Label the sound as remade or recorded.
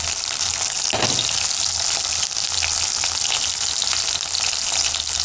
recorded